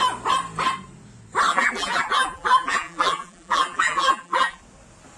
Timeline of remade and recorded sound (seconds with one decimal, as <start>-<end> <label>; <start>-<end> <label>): 0.0-1.5 recorded; 1.5-4.6 remade; 4.6-5.2 recorded